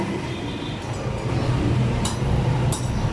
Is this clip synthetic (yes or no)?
no